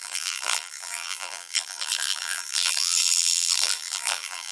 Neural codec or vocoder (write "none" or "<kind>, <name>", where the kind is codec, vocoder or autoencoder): vocoder, BigVGAN v2